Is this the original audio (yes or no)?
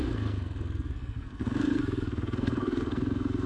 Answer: no